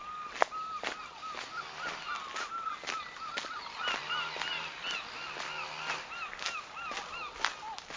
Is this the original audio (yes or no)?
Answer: yes